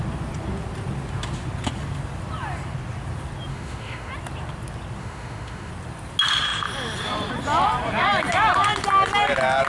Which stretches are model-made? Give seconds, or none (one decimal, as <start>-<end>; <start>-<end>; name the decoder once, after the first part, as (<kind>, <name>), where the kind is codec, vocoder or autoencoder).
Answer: 3.5-4.1 (autoencoder, DAC-VAE); 5.0-5.7